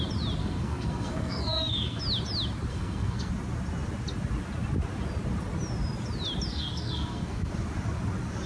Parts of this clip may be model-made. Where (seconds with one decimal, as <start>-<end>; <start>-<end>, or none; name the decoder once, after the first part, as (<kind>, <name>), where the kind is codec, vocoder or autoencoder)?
0.4-2.0 (codec, SNAC); 2.7-3.3; 6.5-7.5